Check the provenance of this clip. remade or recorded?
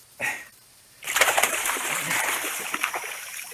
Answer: remade